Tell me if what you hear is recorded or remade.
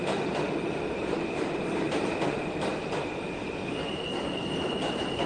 recorded